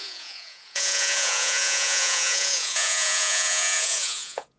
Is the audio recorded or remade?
remade